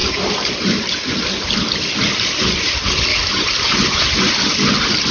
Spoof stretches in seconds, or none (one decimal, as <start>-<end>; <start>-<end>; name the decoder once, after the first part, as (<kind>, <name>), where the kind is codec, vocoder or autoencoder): 0.0-1.2 (vocoder, BigVGAN v2); 3.1-4.3

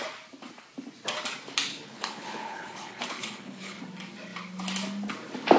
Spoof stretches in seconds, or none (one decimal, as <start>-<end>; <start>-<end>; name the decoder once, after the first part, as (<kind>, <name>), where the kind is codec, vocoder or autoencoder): 1.7-3.8 (codec, HILCodec)

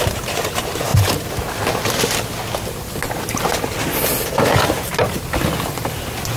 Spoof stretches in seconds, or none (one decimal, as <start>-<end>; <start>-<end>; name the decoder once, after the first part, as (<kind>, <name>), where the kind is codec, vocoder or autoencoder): none

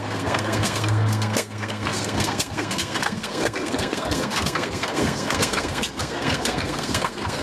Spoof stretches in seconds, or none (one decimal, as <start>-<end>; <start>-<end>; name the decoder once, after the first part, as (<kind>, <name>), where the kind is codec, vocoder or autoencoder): 0.0-7.4 (codec, SNAC)

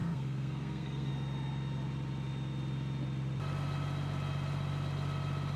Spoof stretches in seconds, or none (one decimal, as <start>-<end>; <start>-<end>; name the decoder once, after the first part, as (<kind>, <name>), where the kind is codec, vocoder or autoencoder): 0.0-1.1 (codec, SNAC)

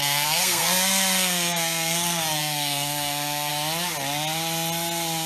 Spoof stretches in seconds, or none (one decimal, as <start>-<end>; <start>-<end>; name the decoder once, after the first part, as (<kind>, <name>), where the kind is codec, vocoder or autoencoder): 0.0-3.5 (codec, SNAC)

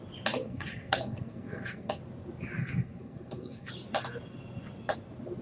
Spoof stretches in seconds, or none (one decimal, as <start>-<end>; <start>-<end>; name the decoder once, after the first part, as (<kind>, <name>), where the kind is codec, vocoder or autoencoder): 0.4-2.0 (codec, SNAC); 2.6-3.7

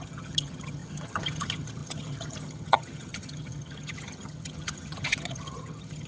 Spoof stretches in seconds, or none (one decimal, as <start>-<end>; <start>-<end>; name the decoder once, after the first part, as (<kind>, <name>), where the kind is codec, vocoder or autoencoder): 0.0-6.1 (vocoder, HiFi-GAN)